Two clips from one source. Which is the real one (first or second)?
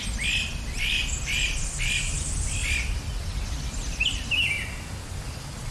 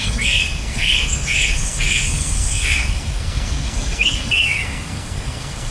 first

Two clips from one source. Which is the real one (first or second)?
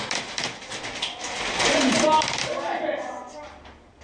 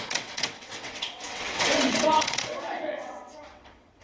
first